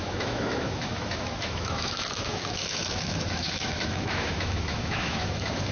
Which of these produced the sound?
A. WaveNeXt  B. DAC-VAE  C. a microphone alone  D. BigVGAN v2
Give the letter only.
B